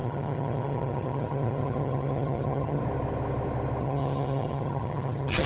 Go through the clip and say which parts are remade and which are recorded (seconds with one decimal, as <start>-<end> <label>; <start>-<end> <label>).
0.0-2.8 remade; 2.8-3.8 recorded; 3.8-5.5 remade